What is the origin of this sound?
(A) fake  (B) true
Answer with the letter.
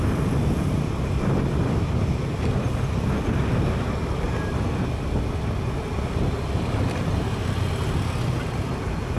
B